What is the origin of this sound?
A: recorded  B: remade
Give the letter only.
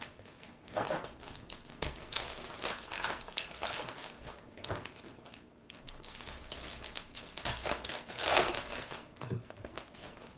B